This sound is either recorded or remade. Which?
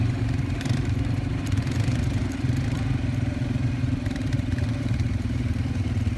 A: remade